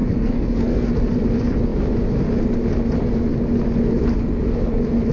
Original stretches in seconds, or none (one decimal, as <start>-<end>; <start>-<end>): 0.9-5.1